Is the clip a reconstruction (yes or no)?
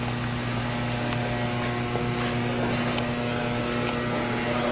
no